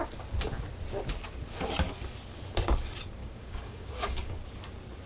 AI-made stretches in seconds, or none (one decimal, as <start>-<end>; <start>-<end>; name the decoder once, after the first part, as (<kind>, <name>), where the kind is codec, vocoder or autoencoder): 3.2-4.4 (codec, DAC)